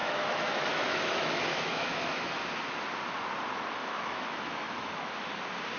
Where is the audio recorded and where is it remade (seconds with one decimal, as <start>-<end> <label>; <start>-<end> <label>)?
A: 0.0-2.3 remade; 2.3-3.8 recorded; 3.8-5.3 remade; 5.3-5.8 recorded